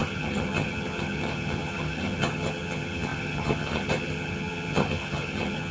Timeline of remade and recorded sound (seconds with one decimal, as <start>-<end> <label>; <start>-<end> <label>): 0.0-5.7 remade